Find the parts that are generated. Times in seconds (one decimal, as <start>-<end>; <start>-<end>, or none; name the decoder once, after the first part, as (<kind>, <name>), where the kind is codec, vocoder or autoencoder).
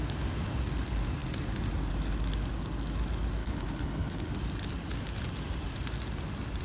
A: 3.4-4.3 (codec, HILCodec)